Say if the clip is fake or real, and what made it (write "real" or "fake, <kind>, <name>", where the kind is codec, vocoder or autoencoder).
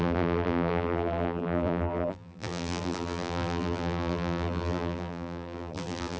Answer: fake, vocoder, BigVGAN v2